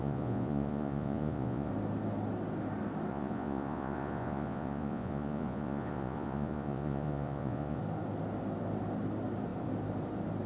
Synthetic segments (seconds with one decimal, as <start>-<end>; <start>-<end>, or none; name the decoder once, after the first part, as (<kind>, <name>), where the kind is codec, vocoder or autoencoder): 0.0-1.7 (vocoder, Vocos); 3.1-7.8